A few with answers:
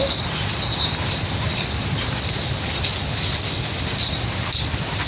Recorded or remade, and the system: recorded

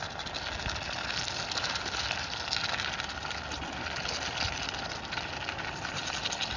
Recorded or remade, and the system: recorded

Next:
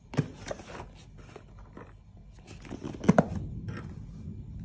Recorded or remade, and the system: recorded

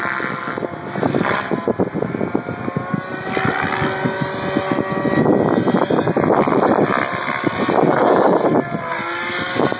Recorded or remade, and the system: recorded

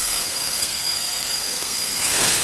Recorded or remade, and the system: remade, codec, SNAC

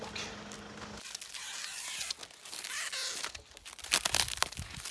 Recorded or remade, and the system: recorded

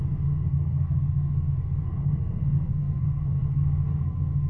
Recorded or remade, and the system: remade, codec, SNAC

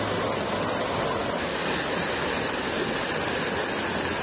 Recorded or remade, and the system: recorded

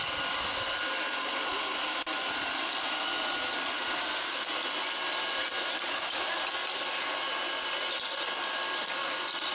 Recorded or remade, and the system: recorded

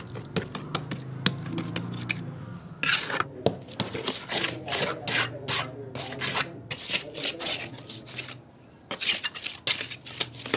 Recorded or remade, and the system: recorded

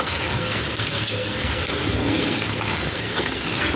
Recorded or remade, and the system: remade, codec, SNAC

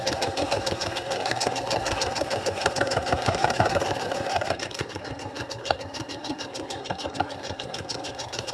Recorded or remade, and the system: remade, codec, SNAC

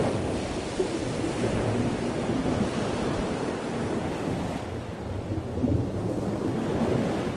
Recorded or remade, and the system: recorded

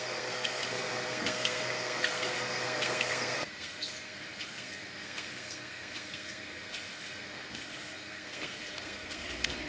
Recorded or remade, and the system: remade, codec, SNAC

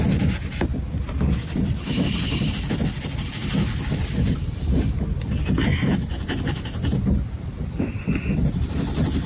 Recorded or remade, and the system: recorded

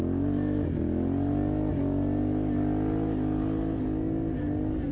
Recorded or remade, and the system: recorded